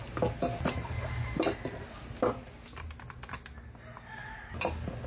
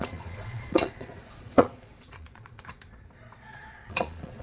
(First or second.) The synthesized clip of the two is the second